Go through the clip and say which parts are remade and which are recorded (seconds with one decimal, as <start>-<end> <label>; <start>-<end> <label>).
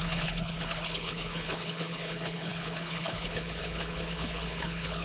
0.0-5.0 remade